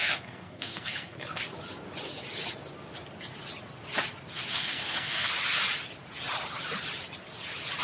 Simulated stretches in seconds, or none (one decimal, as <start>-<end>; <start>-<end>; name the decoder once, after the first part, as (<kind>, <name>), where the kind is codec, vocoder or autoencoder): 0.0-1.4 (codec, SNAC); 4.5-5.3